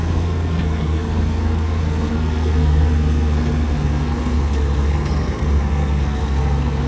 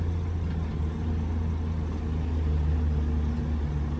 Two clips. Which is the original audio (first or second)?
second